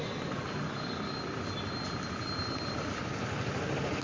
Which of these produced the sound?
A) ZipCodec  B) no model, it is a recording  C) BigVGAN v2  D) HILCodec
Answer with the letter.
B